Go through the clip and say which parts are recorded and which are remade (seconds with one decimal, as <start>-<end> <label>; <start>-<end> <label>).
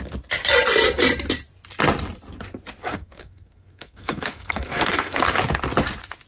0.0-2.9 recorded; 2.9-5.3 remade; 5.3-6.3 recorded